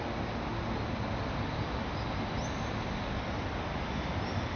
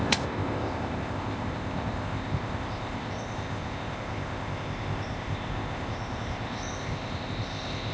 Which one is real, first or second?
first